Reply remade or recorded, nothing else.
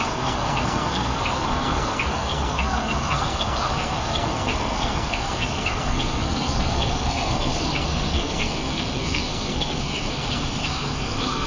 remade